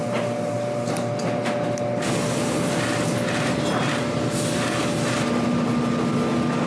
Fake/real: real